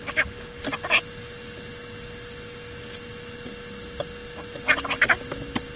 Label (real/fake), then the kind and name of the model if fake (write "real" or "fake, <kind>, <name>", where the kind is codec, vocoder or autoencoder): real